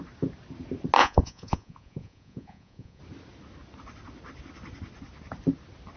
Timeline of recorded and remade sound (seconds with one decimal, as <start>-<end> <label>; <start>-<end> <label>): 0.0-1.0 recorded; 1.0-3.0 remade; 3.0-6.0 recorded